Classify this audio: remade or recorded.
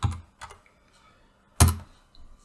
recorded